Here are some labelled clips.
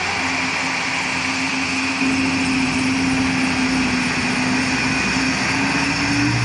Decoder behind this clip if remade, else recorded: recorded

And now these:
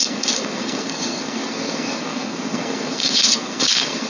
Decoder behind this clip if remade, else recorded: remade, codec, SNAC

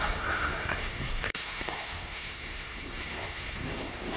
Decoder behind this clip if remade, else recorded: remade, codec, SNAC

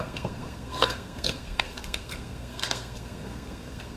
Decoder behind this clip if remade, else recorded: remade, codec, SNAC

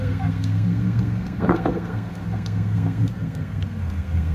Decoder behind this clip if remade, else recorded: remade, codec, SNAC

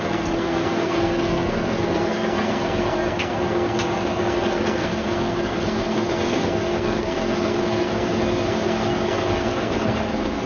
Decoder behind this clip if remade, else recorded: remade, codec, SNAC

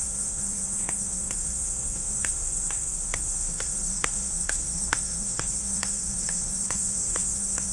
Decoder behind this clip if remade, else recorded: remade, codec, SNAC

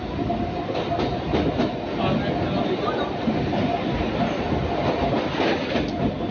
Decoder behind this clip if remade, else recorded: recorded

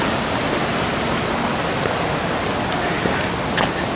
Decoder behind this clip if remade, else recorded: recorded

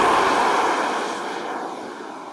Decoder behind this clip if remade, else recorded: recorded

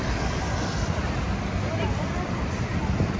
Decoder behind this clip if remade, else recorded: recorded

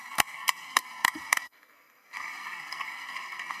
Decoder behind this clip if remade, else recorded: remade, codec, SNAC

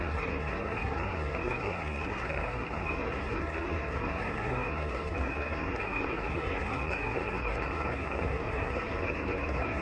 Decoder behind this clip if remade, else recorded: remade, codec, SNAC